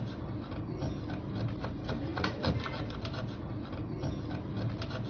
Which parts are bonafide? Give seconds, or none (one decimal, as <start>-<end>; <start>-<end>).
0.0-5.1